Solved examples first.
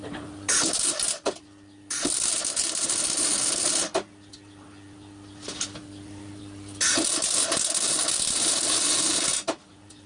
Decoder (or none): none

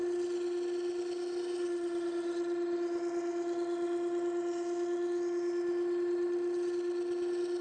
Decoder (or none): none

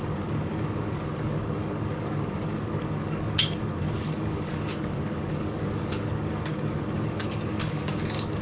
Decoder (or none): codec, DAC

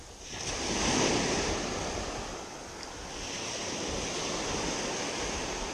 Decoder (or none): none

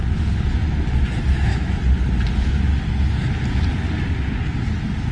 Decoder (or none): none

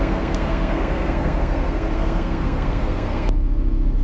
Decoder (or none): codec, SNAC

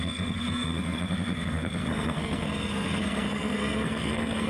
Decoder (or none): codec, SNAC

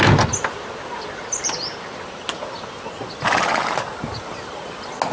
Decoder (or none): none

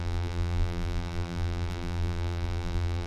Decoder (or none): vocoder, BigVGAN v2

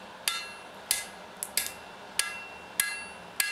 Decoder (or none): none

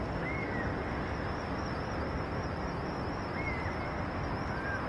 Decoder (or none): none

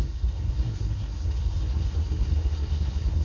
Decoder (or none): codec, SNAC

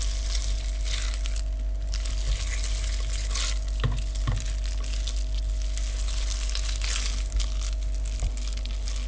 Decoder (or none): none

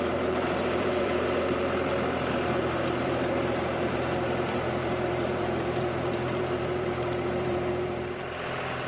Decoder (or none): vocoder, BigVGAN v2